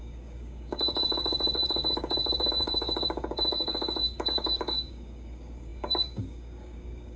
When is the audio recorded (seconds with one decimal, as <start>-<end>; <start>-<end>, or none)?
none